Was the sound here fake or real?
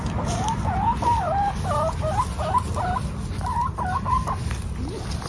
real